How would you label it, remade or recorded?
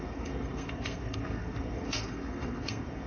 remade